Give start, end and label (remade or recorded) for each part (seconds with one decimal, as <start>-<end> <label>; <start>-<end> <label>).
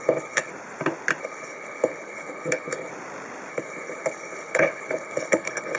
0.0-0.5 remade; 0.5-1.2 recorded; 1.2-2.9 remade; 2.9-3.5 recorded; 3.5-5.8 remade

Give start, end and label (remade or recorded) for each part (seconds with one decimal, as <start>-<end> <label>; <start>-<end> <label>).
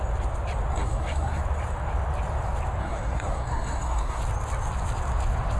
0.0-0.7 recorded; 0.7-1.4 remade; 1.4-2.8 recorded; 2.8-4.2 remade; 4.2-5.6 recorded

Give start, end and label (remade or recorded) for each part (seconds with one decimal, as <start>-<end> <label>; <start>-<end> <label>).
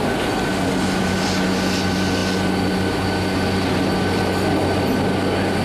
0.0-5.6 recorded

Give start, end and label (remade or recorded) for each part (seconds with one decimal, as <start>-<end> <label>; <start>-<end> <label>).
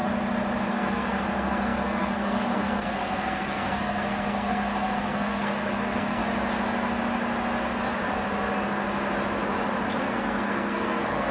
0.0-0.7 recorded; 0.7-6.2 remade; 6.2-10.0 recorded; 10.0-11.3 remade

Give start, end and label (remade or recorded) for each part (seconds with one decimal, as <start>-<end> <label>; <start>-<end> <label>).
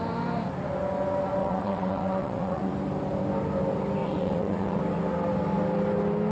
0.0-1.4 recorded; 1.4-2.7 remade; 2.7-4.0 recorded; 4.0-4.8 remade; 4.8-6.3 recorded